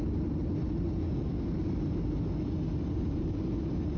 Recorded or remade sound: recorded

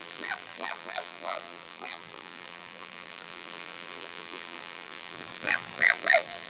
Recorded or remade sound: remade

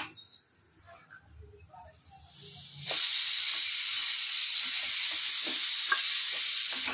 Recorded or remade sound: recorded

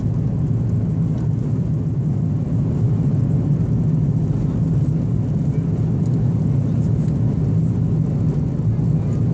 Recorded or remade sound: recorded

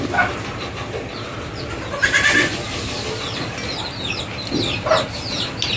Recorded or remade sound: recorded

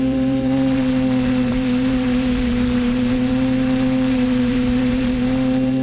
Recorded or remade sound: remade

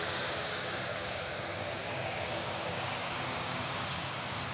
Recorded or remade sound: remade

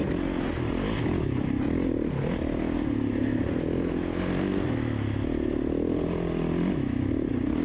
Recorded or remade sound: recorded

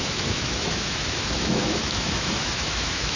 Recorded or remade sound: remade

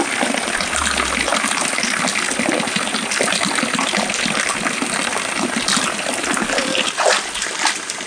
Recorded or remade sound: recorded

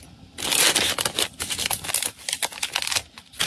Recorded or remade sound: recorded